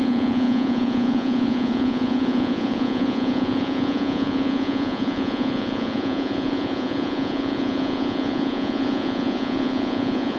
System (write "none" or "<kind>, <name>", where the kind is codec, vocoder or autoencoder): vocoder, Vocos